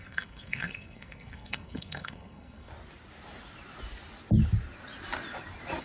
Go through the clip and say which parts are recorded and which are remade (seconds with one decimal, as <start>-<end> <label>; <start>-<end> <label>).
0.0-2.7 remade; 2.7-5.8 recorded